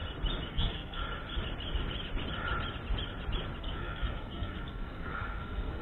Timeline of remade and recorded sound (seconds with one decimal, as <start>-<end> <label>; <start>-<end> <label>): 0.0-0.5 recorded; 0.5-1.0 remade; 1.0-3.6 recorded; 3.6-5.8 remade